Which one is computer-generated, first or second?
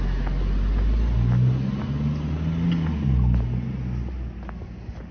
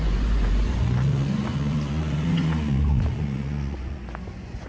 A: second